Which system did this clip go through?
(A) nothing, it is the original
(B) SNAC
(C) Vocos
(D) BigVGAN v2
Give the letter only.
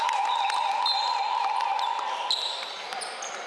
A